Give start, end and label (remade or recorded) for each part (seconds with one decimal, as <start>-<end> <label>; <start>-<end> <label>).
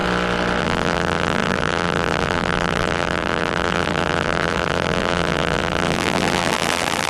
0.0-0.6 recorded; 0.6-7.1 remade